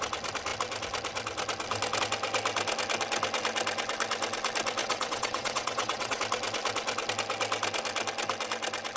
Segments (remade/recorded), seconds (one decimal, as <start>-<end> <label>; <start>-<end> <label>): 0.0-4.8 recorded; 4.8-6.2 remade; 6.2-9.0 recorded

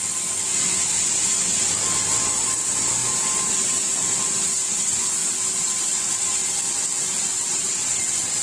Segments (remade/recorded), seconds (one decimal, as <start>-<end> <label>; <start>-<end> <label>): 0.0-7.4 recorded; 7.4-8.0 remade; 8.0-8.4 recorded

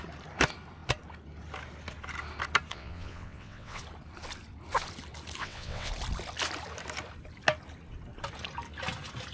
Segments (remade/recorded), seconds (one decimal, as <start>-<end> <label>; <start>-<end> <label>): 0.0-2.7 recorded; 2.7-3.8 remade; 3.8-5.4 recorded; 5.4-5.9 remade; 5.9-9.3 recorded

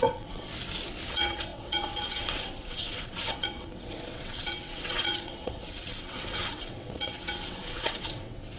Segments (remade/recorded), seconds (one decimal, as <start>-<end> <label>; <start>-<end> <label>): 0.0-0.5 remade; 0.5-1.1 recorded; 1.1-8.6 remade